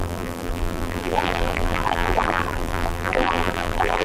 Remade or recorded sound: remade